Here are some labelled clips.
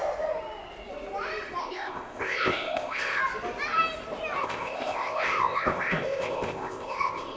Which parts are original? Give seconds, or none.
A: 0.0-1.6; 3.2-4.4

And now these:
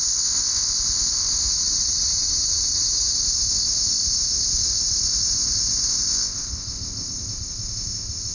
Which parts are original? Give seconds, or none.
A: 1.5-3.1